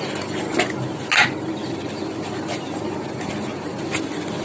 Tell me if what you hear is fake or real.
real